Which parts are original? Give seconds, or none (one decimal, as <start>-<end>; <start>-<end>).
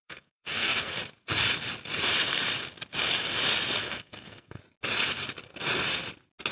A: 1.0-3.8; 4.6-6.5